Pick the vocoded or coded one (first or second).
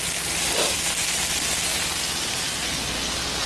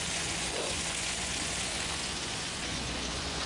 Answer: second